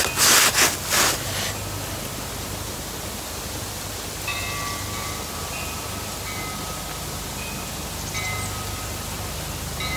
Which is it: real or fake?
real